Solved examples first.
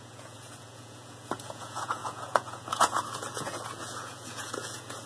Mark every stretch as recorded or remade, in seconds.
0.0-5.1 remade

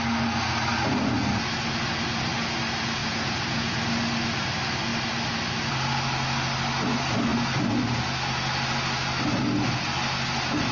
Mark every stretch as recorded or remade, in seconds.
0.0-3.0 recorded; 3.0-3.8 remade; 3.8-10.7 recorded